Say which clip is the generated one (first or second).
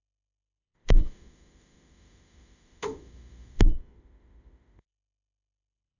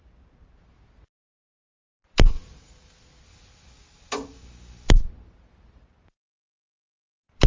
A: first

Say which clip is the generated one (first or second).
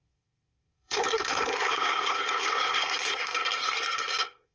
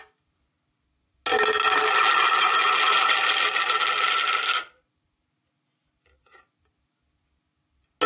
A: first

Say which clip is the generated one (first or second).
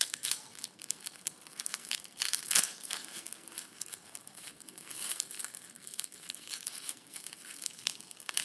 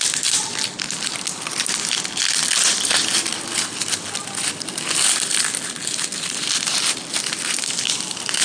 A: first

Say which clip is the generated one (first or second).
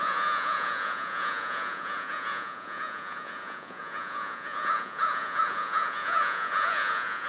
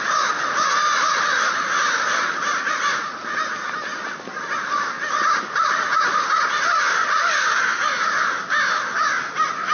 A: first